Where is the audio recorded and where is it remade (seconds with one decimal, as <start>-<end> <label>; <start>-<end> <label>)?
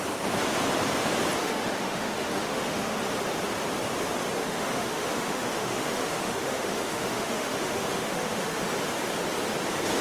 0.0-1.4 recorded; 1.4-3.0 remade; 3.0-4.4 recorded; 4.4-8.6 remade; 8.6-10.0 recorded